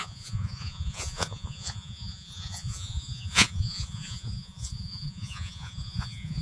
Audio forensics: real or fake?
fake